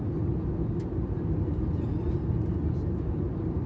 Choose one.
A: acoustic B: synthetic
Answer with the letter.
A